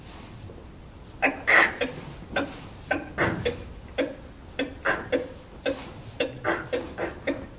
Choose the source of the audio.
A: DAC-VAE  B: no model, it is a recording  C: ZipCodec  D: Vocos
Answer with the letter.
B